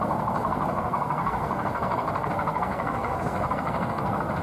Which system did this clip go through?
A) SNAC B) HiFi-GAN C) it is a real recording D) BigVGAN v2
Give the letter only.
A